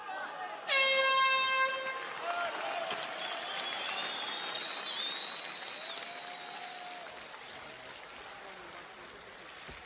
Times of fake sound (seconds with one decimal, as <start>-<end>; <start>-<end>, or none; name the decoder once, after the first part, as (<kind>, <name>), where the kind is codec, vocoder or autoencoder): none